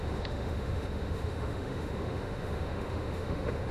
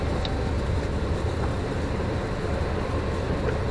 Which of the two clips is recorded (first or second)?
second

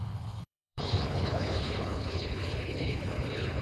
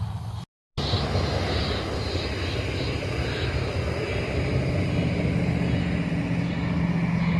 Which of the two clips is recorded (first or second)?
second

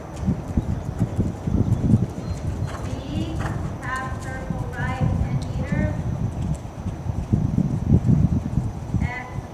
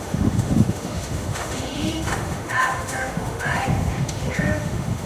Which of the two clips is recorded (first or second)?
first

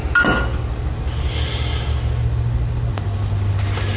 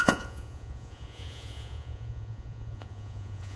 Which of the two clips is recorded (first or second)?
first